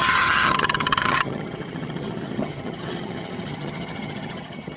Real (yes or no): no